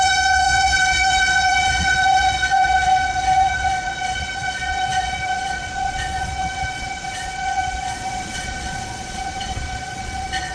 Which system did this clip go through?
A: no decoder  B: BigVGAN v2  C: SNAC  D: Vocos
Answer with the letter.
D